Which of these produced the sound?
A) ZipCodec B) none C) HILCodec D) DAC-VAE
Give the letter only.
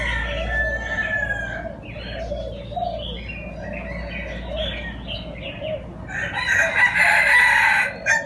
B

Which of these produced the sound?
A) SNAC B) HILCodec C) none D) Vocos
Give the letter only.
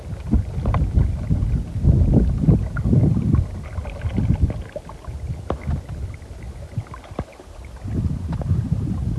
C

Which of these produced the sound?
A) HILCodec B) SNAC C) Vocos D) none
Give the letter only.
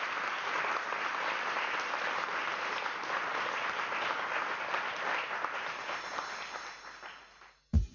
D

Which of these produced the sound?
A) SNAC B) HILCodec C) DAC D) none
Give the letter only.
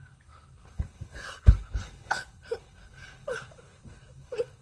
B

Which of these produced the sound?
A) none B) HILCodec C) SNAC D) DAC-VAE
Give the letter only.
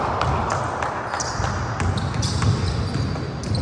A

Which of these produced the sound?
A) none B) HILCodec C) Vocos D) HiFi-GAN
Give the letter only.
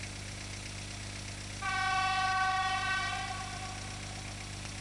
A